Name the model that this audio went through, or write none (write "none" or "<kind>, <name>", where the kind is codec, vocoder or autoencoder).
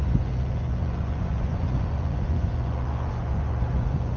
vocoder, Vocos